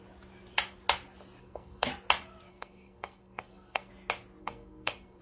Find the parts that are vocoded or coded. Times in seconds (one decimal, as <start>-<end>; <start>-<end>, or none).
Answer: 1.4-1.9; 2.5-3.9; 4.4-5.2